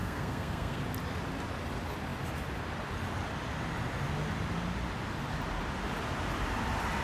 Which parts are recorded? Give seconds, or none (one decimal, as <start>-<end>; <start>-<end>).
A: 0.8-7.0